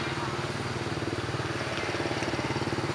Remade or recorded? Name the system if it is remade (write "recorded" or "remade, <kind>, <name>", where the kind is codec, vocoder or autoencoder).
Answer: recorded